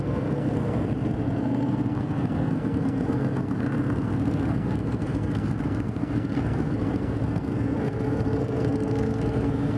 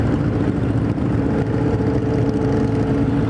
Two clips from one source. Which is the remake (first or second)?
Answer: first